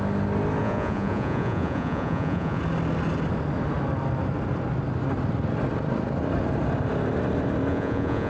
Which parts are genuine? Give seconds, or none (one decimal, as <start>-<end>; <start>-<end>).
0.0-0.6; 2.6-7.7